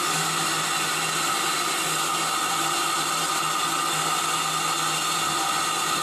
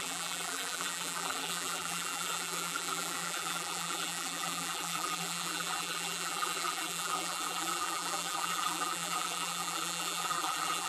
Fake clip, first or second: second